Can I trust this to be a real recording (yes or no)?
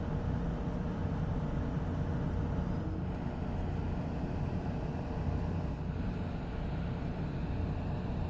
yes